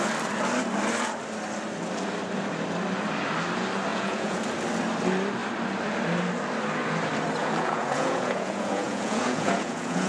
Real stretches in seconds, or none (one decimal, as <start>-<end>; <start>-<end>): 0.0-3.9; 4.4-7.4